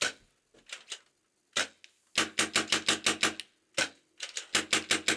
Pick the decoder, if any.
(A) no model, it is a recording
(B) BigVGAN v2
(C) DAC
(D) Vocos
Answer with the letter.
A